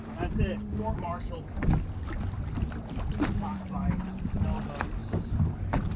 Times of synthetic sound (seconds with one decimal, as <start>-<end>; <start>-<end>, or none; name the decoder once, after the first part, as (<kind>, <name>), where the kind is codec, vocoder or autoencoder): 0.7-1.3 (codec, DAC)